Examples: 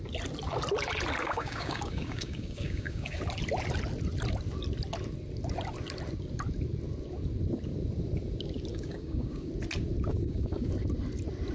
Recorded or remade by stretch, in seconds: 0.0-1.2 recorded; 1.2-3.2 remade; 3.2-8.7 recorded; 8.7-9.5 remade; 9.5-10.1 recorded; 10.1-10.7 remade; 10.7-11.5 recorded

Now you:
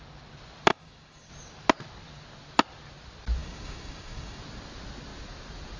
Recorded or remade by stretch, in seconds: 0.0-0.7 recorded; 0.7-1.3 remade; 1.3-3.4 recorded; 3.4-4.4 remade; 4.4-5.8 recorded

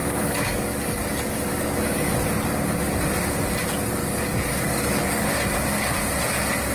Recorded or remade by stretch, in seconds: 0.0-2.2 remade; 2.2-4.0 recorded; 4.0-5.3 remade; 5.3-6.7 recorded

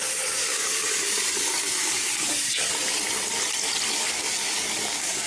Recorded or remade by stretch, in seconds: 0.0-2.7 remade; 2.7-3.9 recorded; 3.9-5.3 remade

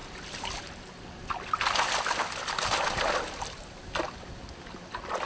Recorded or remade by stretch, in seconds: 0.0-5.3 recorded

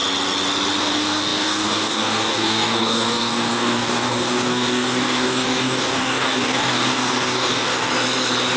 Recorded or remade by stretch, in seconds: 0.0-0.8 recorded; 0.8-7.9 remade; 7.9-8.6 recorded

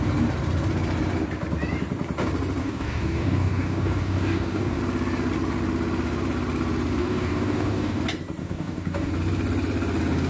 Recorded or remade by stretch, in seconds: 0.0-2.6 recorded; 2.6-4.8 remade; 4.8-7.0 recorded; 7.0-8.0 remade; 8.0-8.4 recorded; 8.4-9.1 remade; 9.1-10.3 recorded

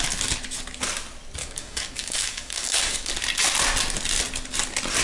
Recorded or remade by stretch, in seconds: 0.0-1.4 recorded; 1.4-3.1 remade; 3.1-5.0 recorded